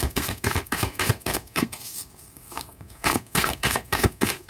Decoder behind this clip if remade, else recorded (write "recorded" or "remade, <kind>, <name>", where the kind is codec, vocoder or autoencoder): remade, codec, SNAC